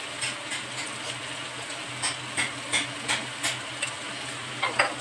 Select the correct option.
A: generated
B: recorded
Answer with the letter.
B